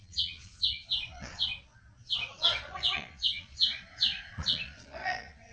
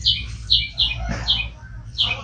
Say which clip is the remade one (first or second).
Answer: first